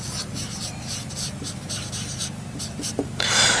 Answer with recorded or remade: remade